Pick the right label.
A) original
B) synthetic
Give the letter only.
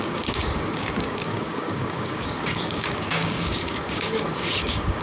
B